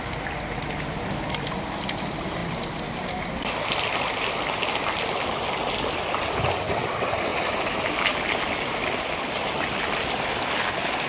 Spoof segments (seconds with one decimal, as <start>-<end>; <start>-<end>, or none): none